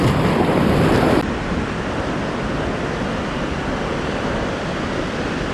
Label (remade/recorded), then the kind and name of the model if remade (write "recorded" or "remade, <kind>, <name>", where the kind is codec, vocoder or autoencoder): recorded